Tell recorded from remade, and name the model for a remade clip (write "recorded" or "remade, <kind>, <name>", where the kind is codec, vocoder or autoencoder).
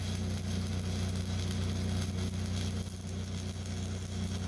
recorded